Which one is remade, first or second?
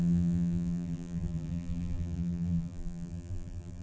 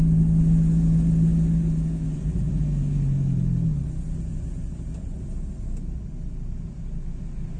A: first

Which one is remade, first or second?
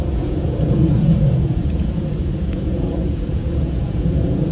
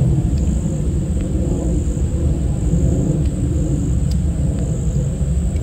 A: first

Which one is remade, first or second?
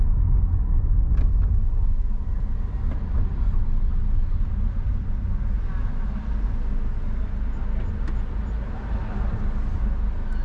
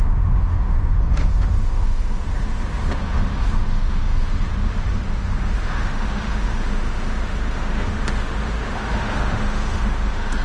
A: second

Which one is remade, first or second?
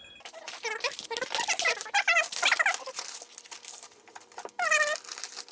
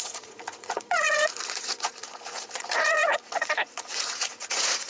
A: second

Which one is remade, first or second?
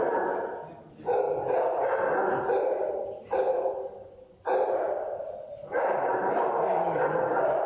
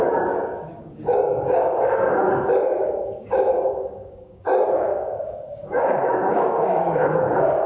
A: second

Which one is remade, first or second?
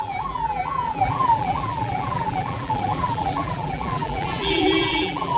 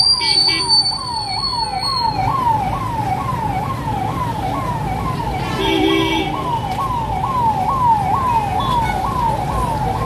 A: first